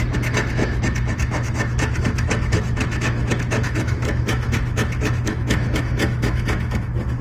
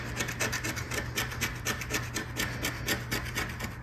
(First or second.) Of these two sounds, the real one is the second